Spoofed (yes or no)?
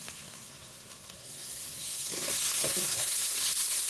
yes